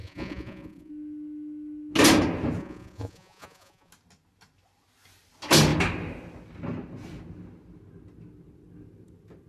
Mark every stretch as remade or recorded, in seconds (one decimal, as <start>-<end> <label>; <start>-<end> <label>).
0.0-0.9 remade; 0.9-2.6 recorded; 2.6-3.9 remade; 3.9-9.5 recorded